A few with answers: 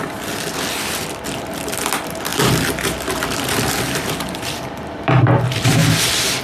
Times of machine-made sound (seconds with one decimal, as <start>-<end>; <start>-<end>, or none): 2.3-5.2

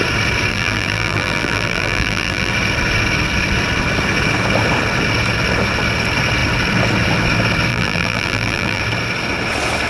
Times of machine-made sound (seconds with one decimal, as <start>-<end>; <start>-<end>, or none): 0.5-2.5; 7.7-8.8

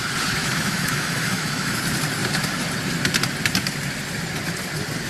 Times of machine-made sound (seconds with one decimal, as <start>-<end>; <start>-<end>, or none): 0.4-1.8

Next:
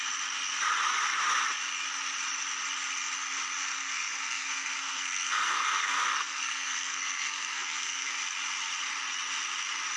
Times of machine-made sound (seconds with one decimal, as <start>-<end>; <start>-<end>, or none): 3.6-8.2

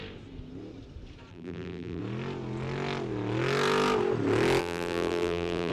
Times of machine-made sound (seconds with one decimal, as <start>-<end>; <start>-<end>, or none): 1.3-2.0; 4.6-5.7

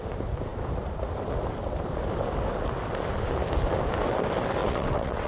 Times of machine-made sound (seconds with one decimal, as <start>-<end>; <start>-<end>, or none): 4.6-5.3

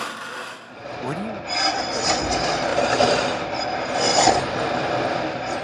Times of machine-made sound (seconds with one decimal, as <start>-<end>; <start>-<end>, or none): none

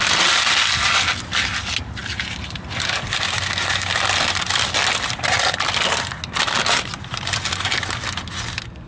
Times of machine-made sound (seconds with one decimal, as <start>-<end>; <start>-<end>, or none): none